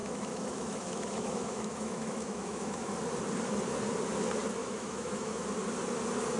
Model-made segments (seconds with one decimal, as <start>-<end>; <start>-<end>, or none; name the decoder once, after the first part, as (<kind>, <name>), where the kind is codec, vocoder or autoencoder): 0.0-2.9 (autoencoder, DAC-VAE); 4.6-5.4